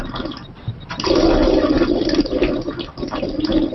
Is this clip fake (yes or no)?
no